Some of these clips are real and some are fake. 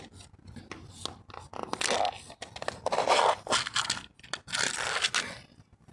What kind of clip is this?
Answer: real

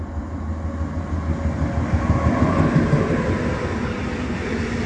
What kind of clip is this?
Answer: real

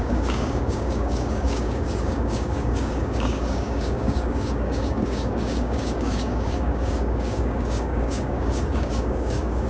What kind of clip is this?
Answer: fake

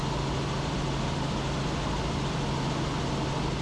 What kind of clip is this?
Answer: real